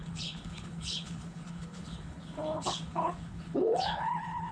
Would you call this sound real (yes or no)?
no